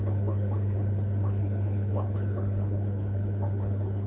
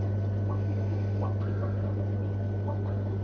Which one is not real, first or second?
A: first